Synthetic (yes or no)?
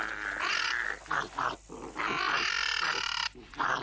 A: no